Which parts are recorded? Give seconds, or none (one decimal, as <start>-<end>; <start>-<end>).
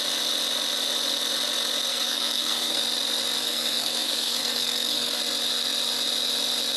0.0-1.9; 2.8-3.4; 5.2-6.8